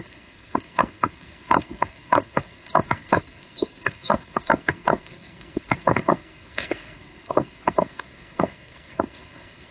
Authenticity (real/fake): fake